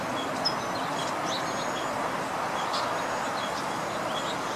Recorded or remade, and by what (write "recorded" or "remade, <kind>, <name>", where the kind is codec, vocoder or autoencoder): recorded